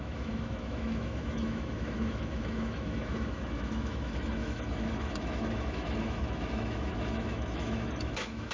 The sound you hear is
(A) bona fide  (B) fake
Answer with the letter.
B